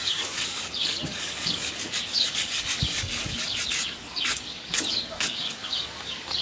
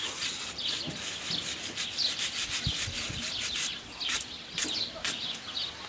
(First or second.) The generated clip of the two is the first